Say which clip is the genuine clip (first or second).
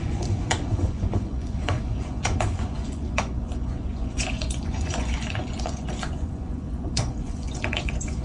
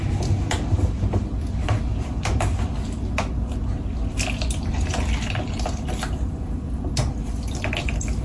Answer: second